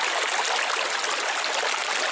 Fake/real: real